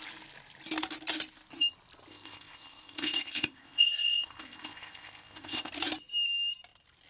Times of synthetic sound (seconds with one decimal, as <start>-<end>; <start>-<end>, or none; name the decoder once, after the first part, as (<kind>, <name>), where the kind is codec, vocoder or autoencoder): 2.1-5.7 (codec, ZipCodec)